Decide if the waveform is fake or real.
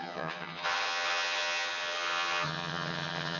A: fake